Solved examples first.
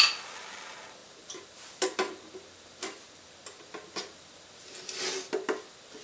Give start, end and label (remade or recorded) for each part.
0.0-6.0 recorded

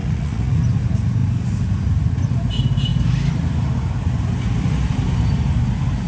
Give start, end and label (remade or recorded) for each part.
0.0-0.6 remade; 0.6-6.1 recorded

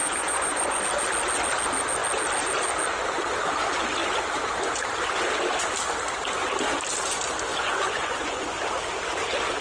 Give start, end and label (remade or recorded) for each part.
0.0-0.8 remade; 0.8-7.5 recorded; 7.5-8.4 remade; 8.4-9.6 recorded

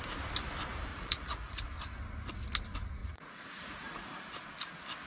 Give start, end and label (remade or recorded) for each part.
0.0-0.9 recorded; 0.9-1.6 remade; 1.6-3.0 recorded; 3.0-4.2 remade; 4.2-5.1 recorded

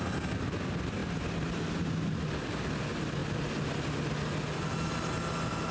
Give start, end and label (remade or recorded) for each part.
0.0-5.7 recorded